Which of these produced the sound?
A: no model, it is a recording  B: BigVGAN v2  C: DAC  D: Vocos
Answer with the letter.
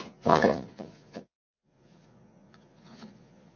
D